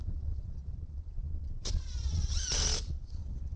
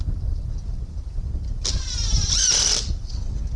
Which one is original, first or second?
second